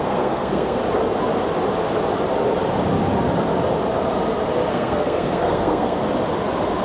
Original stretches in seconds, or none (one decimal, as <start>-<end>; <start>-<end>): 0.8-4.7; 6.0-6.8